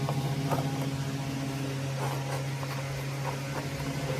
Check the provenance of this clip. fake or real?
real